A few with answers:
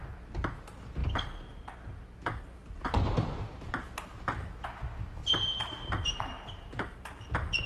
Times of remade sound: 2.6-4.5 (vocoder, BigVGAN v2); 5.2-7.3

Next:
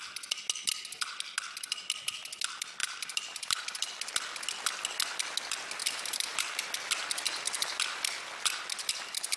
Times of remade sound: 2.8-3.6 (vocoder, BigVGAN v2); 5.8-6.6

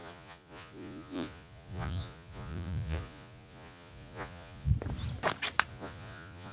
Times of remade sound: 0.0-4.7 (vocoder, Vocos); 5.7-6.5

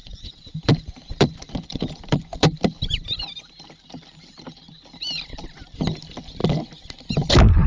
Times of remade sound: 0.0-0.6 (vocoder, WaveNeXt)

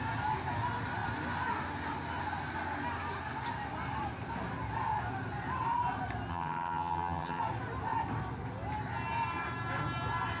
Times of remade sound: 6.3-7.4 (vocoder, HiFi-GAN)

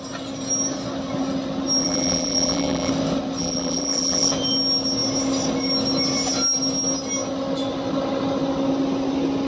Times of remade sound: 1.8-2.9 (vocoder, BigVGAN v2); 3.4-4.3

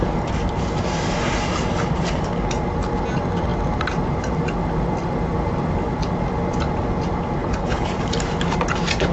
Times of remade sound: 7.4-7.9 (codec, HILCodec)